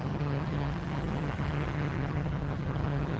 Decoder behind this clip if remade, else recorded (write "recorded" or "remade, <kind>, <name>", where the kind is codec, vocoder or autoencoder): remade, vocoder, HiFi-GAN